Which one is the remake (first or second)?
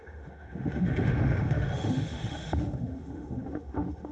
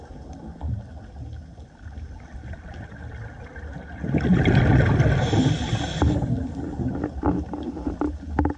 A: first